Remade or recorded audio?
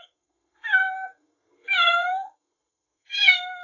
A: remade